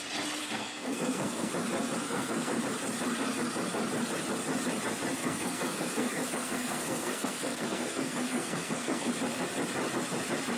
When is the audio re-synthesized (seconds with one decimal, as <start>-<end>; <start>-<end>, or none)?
0.4-1.5; 2.0-2.6; 5.2-9.1